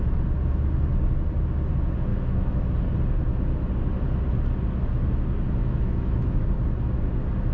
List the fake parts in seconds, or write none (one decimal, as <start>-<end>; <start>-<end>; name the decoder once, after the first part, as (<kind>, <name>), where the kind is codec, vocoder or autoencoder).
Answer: 2.1-2.6 (autoencoder, DAC-VAE); 5.6-6.5